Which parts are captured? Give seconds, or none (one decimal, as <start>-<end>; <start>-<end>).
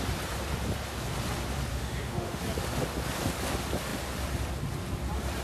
0.0-1.7; 2.4-5.4